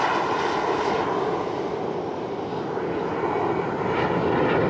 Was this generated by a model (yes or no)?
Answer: no